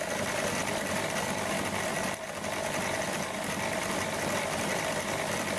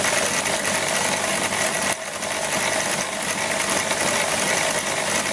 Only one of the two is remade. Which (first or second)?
first